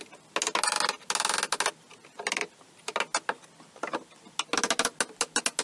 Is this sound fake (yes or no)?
no